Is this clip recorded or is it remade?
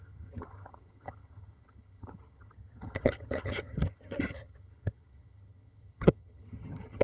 remade